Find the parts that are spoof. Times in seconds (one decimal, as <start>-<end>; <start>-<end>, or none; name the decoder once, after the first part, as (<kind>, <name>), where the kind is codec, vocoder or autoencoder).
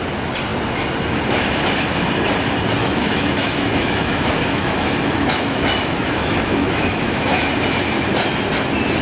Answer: 2.8-7.5 (autoencoder, DAC-VAE)